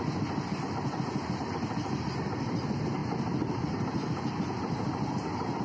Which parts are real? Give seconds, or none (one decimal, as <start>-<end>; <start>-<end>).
0.0-5.6